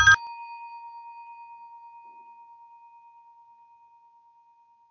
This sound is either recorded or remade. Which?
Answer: recorded